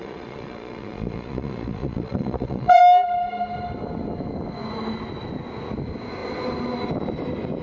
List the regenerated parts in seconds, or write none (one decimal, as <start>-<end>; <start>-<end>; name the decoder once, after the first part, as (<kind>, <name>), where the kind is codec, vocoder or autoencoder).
0.0-2.8 (vocoder, Vocos)

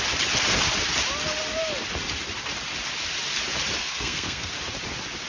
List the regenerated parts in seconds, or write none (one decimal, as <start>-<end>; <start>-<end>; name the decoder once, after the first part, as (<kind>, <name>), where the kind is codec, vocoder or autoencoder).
3.8-4.5 (codec, SNAC)

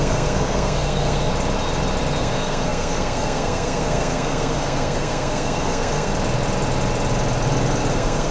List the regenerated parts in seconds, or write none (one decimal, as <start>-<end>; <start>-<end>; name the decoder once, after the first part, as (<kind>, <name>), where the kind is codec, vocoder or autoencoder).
0.0-1.3 (codec, SNAC); 2.2-6.1; 7.9-8.3

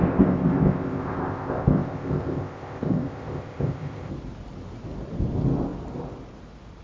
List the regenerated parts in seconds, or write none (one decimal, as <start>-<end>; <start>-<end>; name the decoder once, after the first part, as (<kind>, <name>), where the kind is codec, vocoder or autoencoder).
0.0-4.1 (codec, ZipCodec)

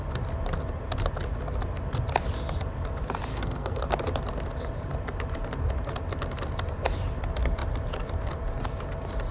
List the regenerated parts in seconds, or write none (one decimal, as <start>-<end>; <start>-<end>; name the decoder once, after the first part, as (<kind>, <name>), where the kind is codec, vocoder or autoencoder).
3.3-3.8 (codec, SNAC)

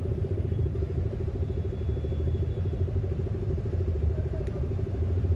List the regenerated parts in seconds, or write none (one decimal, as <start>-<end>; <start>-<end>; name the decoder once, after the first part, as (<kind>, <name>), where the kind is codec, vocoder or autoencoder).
none

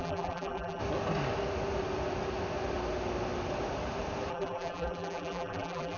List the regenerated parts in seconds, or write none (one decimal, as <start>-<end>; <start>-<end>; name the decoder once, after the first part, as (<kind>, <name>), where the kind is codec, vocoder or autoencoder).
0.0-0.8 (vocoder, BigVGAN v2); 4.3-6.0